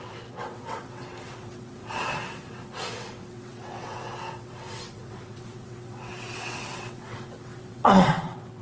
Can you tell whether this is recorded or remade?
remade